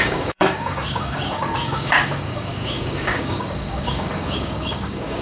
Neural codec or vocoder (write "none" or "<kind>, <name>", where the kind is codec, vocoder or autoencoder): codec, DAC